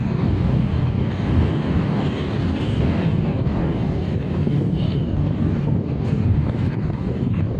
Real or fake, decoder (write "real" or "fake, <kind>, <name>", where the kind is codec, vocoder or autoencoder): fake, codec, DAC